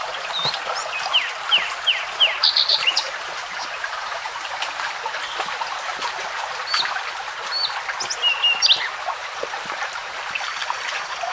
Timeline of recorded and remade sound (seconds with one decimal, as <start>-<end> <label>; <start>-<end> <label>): 0.0-2.7 recorded; 2.7-5.0 remade; 5.0-9.2 recorded; 9.2-10.2 remade; 10.2-11.3 recorded